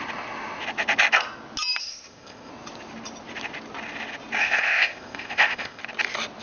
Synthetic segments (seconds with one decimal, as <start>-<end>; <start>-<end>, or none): 1.8-2.5; 4.4-5.8